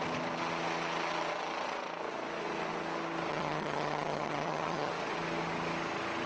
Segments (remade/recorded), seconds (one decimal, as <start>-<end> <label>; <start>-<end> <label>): 0.0-3.3 recorded; 3.3-4.9 remade; 4.9-6.3 recorded